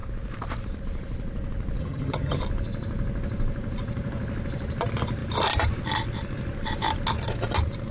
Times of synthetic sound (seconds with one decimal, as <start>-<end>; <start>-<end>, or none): 1.8-2.4